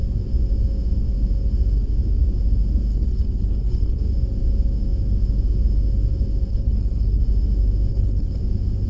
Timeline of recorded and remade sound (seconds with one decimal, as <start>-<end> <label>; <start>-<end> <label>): 0.0-2.9 recorded; 2.9-4.0 remade; 4.0-6.5 recorded; 6.5-7.2 remade; 7.2-7.9 recorded; 7.9-8.4 remade; 8.4-8.9 recorded